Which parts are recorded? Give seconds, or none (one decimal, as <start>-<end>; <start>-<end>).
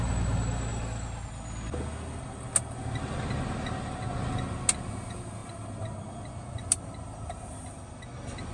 0.0-8.5